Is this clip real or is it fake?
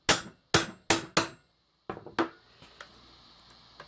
real